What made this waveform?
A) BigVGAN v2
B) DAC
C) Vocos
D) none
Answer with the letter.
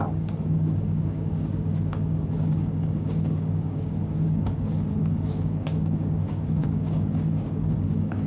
B